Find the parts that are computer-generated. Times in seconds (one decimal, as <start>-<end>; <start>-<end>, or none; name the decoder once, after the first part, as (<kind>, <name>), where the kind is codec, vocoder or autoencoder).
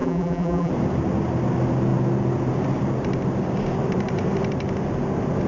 0.0-0.7 (vocoder, BigVGAN v2)